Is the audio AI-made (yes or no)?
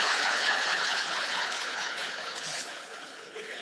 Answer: yes